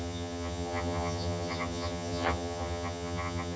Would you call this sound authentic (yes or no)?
no